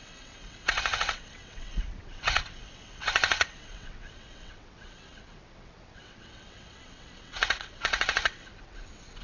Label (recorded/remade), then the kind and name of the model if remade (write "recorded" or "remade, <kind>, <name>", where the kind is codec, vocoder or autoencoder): remade, vocoder, WaveNeXt